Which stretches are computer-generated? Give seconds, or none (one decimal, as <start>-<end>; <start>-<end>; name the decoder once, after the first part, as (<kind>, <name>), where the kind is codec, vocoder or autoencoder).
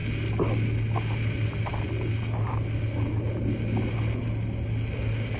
none